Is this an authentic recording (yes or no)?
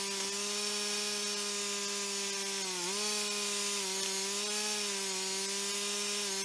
yes